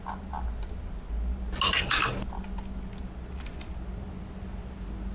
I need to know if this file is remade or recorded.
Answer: recorded